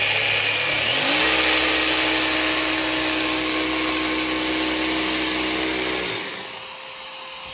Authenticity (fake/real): real